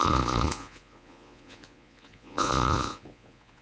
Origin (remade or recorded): remade